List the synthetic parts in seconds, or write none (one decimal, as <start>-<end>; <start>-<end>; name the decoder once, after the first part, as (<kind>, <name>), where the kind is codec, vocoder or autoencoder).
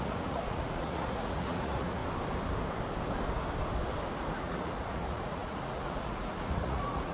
0.0-2.0 (vocoder, Vocos); 4.2-7.1